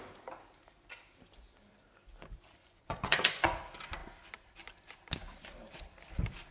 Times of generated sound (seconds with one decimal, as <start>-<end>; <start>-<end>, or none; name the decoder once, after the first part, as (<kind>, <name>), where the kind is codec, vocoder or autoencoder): 2.6-3.6 (vocoder, Vocos)